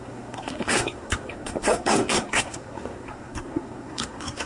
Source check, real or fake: fake